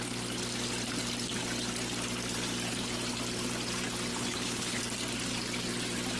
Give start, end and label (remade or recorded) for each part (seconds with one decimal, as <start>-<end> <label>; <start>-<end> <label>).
0.0-4.1 recorded; 4.1-4.8 remade; 4.8-6.2 recorded